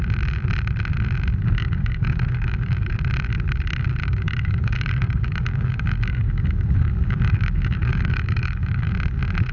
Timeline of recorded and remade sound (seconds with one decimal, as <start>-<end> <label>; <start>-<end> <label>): 0.0-1.6 recorded; 1.6-2.9 remade; 2.9-4.0 recorded; 4.0-8.9 remade; 8.9-9.5 recorded

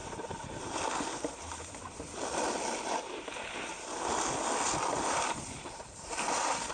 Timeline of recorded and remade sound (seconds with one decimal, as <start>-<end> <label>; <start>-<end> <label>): 0.0-0.6 remade; 0.6-6.7 recorded